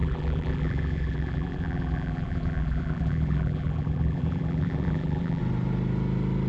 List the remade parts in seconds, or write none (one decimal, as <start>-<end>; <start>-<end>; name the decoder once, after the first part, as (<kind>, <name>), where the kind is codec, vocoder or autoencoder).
0.0-5.4 (vocoder, BigVGAN v2)